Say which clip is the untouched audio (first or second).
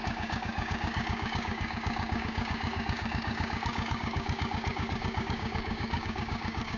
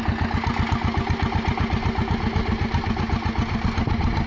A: second